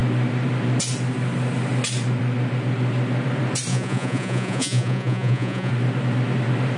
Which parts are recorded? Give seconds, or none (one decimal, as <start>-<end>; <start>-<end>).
0.0-3.7; 5.7-6.8